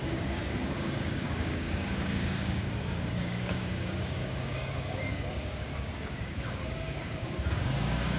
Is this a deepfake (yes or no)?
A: yes